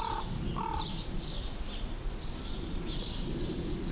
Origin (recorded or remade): recorded